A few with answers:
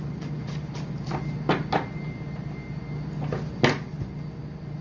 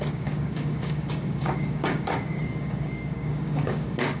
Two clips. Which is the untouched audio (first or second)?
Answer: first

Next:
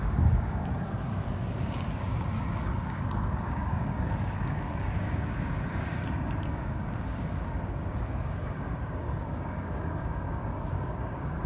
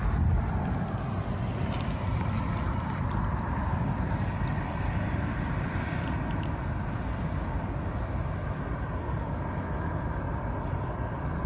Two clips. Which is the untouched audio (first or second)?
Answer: second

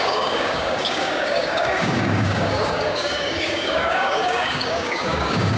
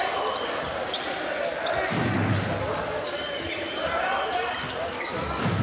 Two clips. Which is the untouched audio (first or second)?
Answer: second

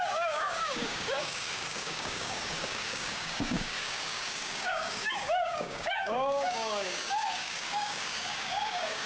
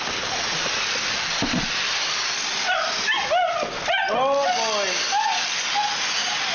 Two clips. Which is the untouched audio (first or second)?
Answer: second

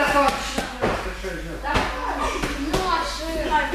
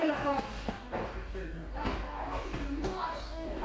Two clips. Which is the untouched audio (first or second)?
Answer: first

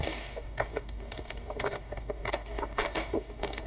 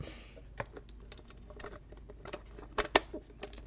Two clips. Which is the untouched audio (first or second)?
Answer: second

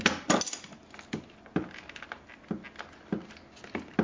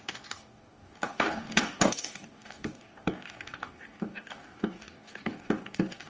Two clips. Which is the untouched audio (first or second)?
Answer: first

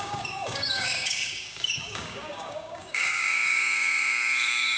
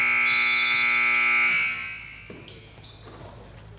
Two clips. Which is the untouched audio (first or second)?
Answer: second